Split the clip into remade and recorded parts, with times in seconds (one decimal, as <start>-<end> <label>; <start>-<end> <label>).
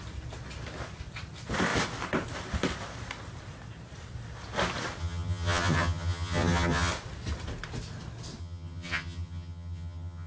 0.0-5.0 recorded; 5.0-6.9 remade; 6.9-8.4 recorded; 8.4-10.3 remade